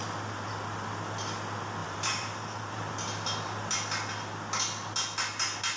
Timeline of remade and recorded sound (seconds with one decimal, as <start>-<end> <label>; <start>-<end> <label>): 0.0-1.8 recorded; 1.8-2.9 remade; 2.9-5.8 recorded